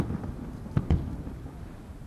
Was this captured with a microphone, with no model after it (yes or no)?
yes